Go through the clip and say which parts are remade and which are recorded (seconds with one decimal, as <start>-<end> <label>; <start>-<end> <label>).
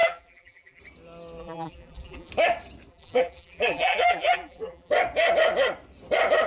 0.0-0.8 remade; 0.8-1.4 recorded; 1.4-2.3 remade; 2.3-2.9 recorded; 2.9-4.9 remade; 4.9-6.5 recorded